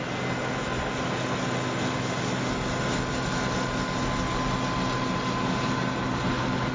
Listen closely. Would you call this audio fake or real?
real